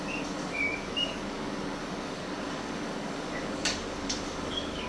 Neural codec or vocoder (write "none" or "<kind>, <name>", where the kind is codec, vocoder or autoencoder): codec, DAC